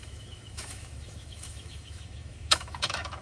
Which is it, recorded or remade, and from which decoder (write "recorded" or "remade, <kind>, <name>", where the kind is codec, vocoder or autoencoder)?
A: remade, autoencoder, DAC-VAE